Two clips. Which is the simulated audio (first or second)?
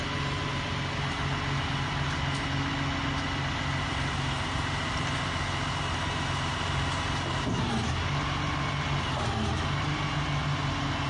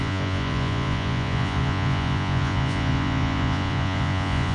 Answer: second